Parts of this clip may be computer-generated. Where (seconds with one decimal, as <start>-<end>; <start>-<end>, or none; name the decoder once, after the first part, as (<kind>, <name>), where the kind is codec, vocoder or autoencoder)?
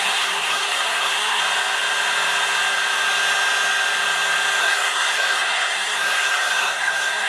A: 0.0-1.4 (codec, SNAC); 4.6-7.3